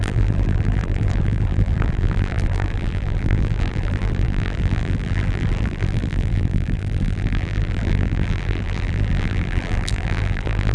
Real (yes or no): no